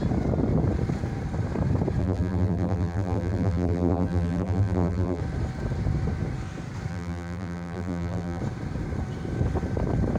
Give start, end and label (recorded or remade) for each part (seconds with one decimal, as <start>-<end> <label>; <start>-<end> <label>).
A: 0.0-2.0 recorded; 2.0-5.2 remade; 5.2-6.9 recorded; 6.9-8.4 remade; 8.4-10.2 recorded